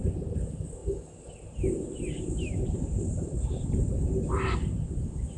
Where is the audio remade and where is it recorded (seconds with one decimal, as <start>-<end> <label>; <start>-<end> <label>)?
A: 0.0-0.8 recorded; 0.8-4.0 remade; 4.0-5.4 recorded